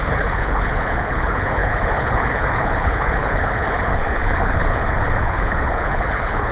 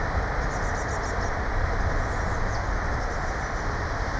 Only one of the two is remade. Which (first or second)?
first